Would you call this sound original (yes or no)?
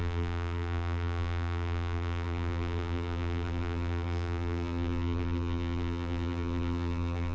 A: no